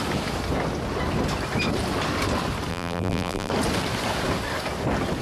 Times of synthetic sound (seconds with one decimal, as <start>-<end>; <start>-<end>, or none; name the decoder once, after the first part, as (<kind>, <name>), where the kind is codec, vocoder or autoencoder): 2.7-3.5 (vocoder, BigVGAN v2)